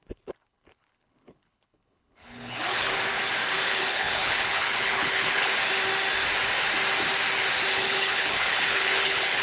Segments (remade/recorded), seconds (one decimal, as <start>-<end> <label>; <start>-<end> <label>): 0.0-2.9 remade; 2.9-3.7 recorded; 3.7-5.5 remade; 5.5-7.7 recorded; 7.7-9.4 remade